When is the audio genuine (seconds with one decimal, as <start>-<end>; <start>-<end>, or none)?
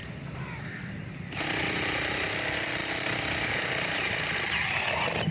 0.0-5.3